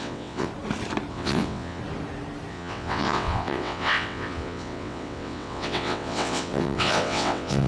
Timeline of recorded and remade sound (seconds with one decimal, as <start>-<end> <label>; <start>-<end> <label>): 0.0-0.5 remade; 0.5-1.1 recorded; 1.1-1.8 remade; 1.8-2.5 recorded; 2.5-7.7 remade